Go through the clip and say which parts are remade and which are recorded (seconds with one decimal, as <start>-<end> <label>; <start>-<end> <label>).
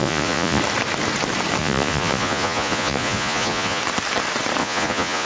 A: 0.0-0.6 remade; 0.6-1.6 recorded; 1.6-3.8 remade; 3.8-4.6 recorded; 4.6-5.3 remade